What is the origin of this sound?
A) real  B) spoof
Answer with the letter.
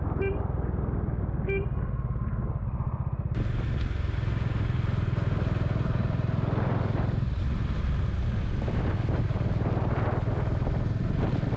A